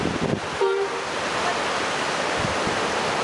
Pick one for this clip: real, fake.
real